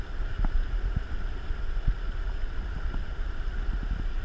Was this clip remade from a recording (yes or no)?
no